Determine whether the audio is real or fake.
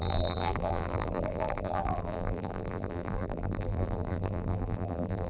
fake